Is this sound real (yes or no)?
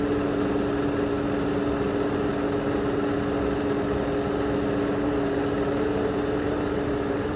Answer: yes